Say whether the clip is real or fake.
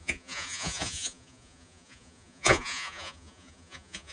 fake